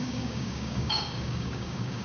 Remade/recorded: remade